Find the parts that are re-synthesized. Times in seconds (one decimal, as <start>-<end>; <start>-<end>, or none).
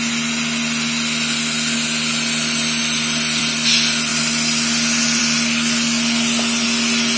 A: none